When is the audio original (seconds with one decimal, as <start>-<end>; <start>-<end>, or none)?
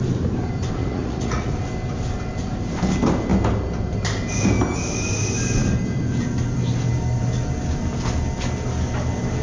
0.0-0.8; 1.5-9.4